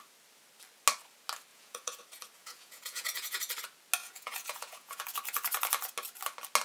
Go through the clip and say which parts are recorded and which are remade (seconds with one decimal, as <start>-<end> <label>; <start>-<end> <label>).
0.0-1.5 recorded; 1.5-2.0 remade; 2.0-2.4 recorded; 2.4-3.5 remade; 3.5-4.0 recorded; 4.0-5.0 remade; 5.0-6.6 recorded